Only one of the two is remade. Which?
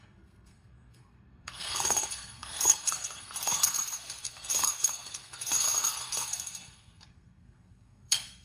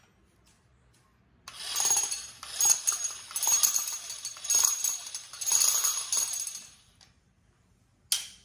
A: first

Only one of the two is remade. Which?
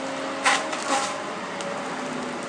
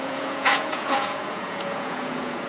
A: second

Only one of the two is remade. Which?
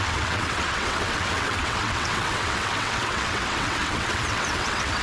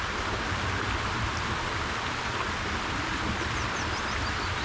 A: first